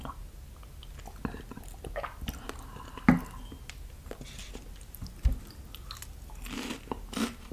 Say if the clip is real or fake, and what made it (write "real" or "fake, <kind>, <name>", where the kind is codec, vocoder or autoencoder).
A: real